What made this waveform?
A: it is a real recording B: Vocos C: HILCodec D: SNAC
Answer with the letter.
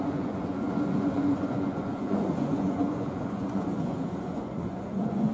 B